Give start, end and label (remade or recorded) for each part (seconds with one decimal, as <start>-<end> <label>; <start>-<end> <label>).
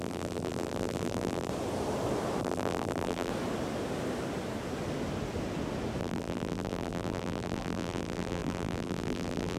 0.0-1.5 remade; 1.5-2.4 recorded; 2.4-3.3 remade; 3.3-6.0 recorded; 6.0-9.6 remade